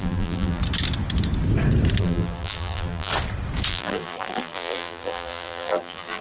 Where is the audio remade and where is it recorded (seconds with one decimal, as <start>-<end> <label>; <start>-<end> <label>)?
0.0-0.6 remade; 0.6-2.0 recorded; 2.0-3.1 remade; 3.1-3.7 recorded; 3.7-6.2 remade